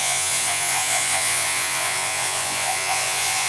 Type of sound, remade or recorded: remade